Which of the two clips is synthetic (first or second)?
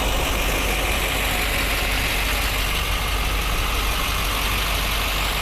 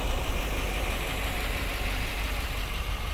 second